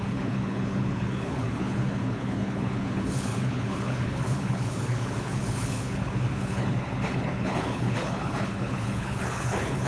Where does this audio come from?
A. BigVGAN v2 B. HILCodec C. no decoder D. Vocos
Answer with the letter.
B